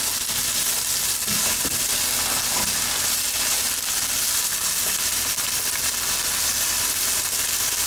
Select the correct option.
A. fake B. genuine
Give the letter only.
B